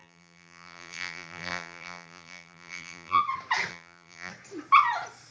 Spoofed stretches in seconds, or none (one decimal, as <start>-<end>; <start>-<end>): 0.0-3.2; 3.7-4.3